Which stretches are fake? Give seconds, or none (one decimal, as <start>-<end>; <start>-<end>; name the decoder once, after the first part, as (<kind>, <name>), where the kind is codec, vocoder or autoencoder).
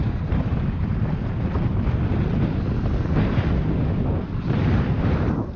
none